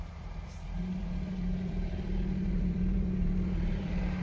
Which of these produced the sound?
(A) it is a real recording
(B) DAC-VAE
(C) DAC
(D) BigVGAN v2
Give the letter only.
D